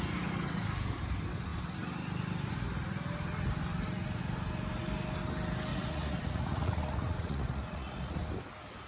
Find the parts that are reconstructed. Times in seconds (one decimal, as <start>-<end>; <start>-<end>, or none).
5.7-8.2